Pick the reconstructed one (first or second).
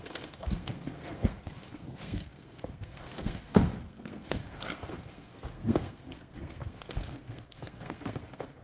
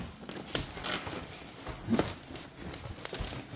first